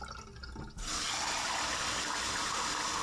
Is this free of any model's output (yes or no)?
yes